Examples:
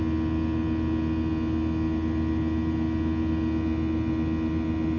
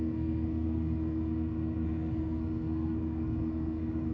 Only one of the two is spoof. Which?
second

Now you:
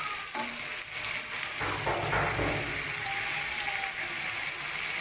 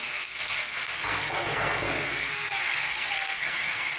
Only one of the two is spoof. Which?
second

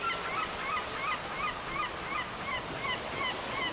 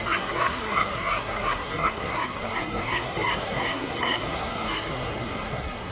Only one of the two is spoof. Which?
second